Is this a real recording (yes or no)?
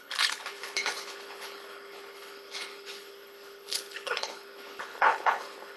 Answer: no